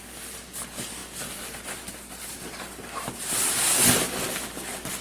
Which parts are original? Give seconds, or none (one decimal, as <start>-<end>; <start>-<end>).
0.0-5.0